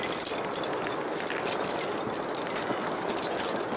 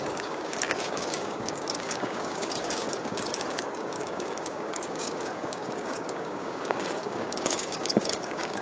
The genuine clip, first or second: first